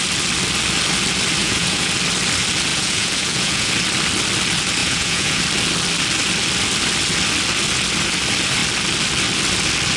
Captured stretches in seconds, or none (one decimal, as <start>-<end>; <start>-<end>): 0.0-1.4; 1.9-2.7; 3.7-4.8; 5.4-10.0